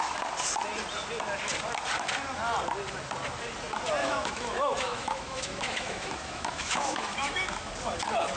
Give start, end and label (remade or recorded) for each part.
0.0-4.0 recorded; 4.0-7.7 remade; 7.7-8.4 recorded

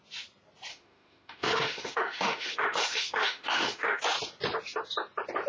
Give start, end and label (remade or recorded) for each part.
0.0-0.7 recorded; 0.7-4.0 remade; 4.0-5.5 recorded

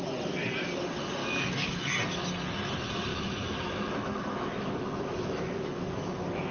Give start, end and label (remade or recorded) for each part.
0.0-1.2 recorded; 1.2-2.0 remade; 2.0-3.1 recorded; 3.1-6.5 remade

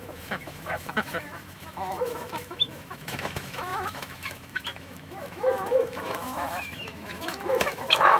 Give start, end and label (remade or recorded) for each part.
0.0-8.2 remade

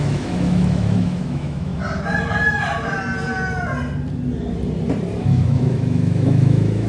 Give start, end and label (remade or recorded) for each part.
0.0-1.7 remade; 1.7-5.2 recorded; 5.2-6.9 remade

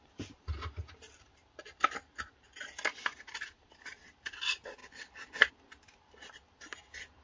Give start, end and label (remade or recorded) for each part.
0.0-7.2 recorded

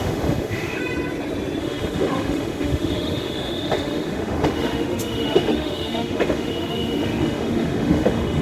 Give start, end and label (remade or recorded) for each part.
0.0-0.8 remade; 0.8-1.6 recorded; 1.6-8.4 remade